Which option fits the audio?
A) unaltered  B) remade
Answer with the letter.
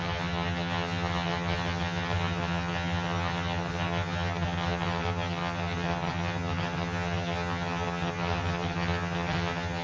B